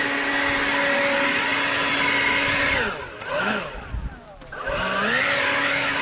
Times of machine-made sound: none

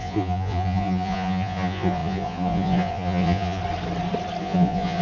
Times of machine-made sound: 0.0-3.6 (vocoder, Vocos); 4.4-5.0

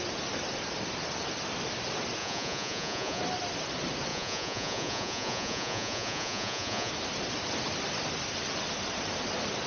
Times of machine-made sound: 2.2-3.2 (vocoder, Vocos); 4.1-6.9

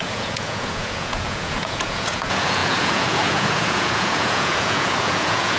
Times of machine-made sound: 0.0-5.6 (vocoder, Vocos)

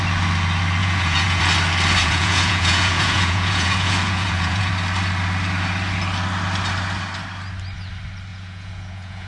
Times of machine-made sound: 0.8-1.4 (vocoder, Vocos); 2.0-4.7; 8.3-9.3

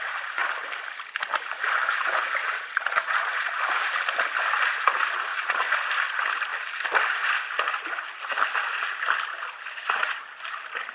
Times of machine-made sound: 2.4-3.6 (vocoder, Vocos); 5.3-5.9

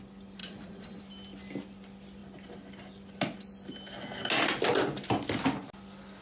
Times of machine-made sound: 0.4-1.0 (vocoder, Vocos)

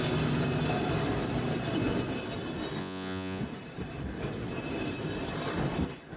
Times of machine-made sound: 2.8-3.4 (vocoder, Vocos)